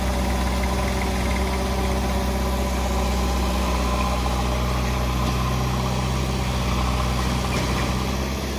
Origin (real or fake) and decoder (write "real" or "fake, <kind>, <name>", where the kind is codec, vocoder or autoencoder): real